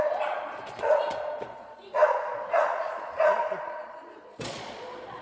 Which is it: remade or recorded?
remade